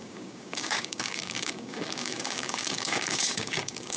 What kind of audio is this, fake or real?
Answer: fake